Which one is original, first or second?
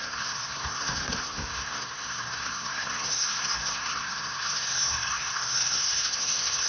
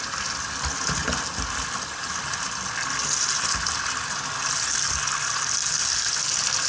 second